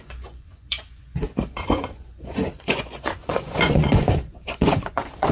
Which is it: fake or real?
fake